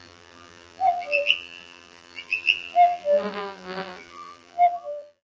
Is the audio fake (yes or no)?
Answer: yes